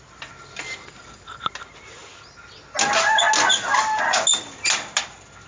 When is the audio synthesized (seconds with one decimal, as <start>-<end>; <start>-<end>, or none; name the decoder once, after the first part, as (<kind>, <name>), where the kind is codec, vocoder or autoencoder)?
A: none